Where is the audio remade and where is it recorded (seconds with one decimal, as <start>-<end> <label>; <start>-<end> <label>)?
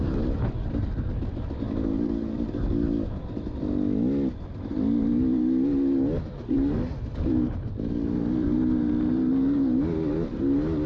0.0-10.9 recorded